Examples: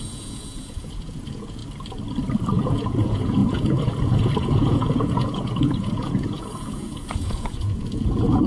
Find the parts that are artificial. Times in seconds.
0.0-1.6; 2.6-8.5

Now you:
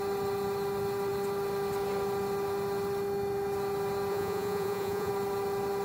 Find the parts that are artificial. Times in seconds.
4.1-5.1

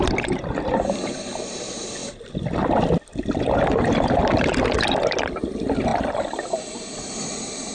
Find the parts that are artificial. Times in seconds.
none

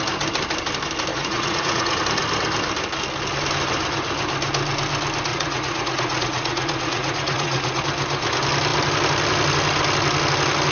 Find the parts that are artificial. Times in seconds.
1.1-2.0; 5.3-7.8

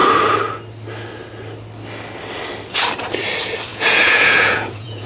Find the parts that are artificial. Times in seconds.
3.7-5.1

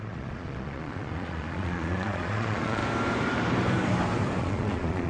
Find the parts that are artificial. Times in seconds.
0.0-2.8; 4.4-5.1

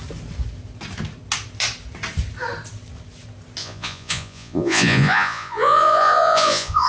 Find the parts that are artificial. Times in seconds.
3.6-6.9